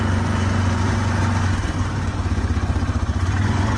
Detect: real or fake fake